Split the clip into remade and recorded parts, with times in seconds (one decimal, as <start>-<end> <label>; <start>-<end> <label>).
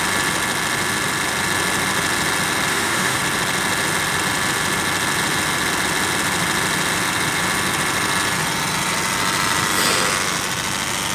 0.0-2.7 recorded; 2.7-3.2 remade; 3.2-11.1 recorded